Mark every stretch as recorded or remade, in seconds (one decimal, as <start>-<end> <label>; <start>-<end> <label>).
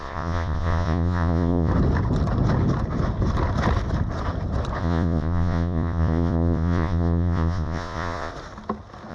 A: 0.0-1.7 remade; 1.7-4.8 recorded; 4.8-8.3 remade; 8.3-9.1 recorded